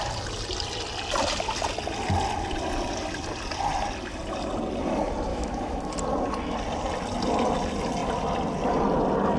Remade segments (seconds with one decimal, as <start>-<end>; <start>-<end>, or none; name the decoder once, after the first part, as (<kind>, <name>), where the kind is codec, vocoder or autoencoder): 5.3-5.9 (autoencoder, DAC-VAE)